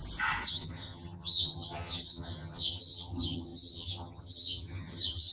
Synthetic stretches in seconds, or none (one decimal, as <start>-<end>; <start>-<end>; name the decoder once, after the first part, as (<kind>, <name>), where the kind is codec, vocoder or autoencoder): 0.5-5.3 (vocoder, HiFi-GAN)